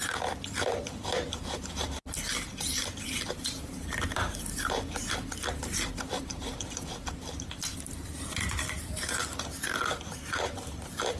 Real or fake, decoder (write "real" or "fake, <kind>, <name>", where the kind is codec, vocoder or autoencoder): fake, vocoder, BigVGAN v2